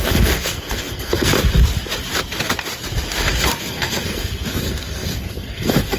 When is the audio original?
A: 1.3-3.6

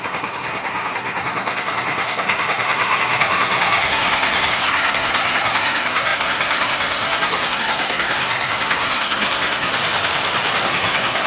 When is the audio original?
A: 9.7-10.6

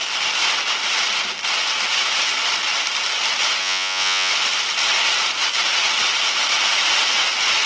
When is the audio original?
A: 0.0-3.6; 4.3-7.7

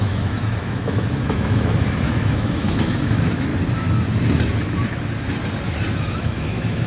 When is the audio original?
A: 3.5-6.0

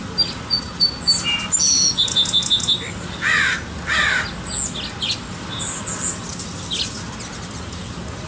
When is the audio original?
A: 0.0-8.3

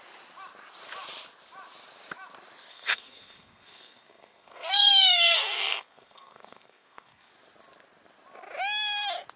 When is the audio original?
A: 0.0-2.7; 7.3-9.4

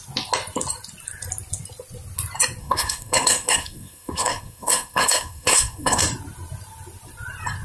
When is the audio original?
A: 0.0-2.6; 6.0-7.6